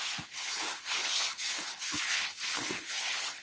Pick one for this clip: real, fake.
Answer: fake